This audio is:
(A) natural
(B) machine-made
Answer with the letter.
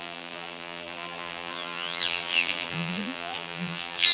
B